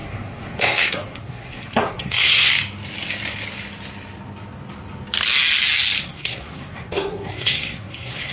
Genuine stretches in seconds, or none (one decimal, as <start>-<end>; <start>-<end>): 2.5-6.0